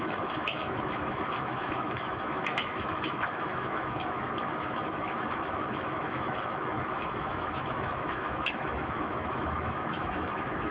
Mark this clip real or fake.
fake